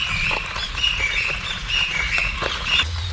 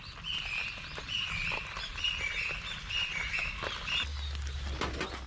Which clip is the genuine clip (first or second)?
second